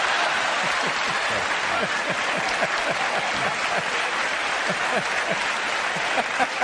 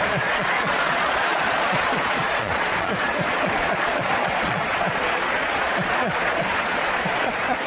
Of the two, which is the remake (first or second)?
second